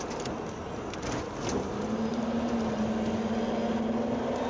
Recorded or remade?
recorded